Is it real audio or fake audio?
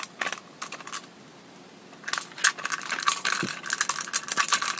real